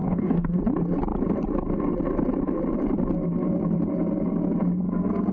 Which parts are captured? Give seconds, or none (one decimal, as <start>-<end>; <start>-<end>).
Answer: 0.6-5.3

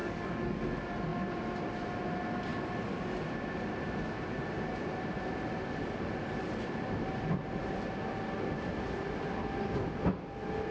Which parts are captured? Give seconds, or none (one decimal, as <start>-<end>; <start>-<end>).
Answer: 0.6-10.7

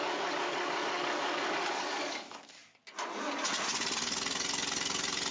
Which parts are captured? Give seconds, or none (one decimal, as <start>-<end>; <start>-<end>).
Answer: 2.8-5.3

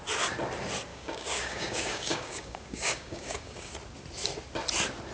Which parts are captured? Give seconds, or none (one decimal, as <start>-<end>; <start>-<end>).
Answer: 0.0-0.9; 3.7-5.1

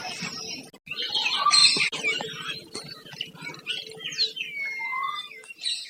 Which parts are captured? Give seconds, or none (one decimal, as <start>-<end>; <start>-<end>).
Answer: 0.0-5.9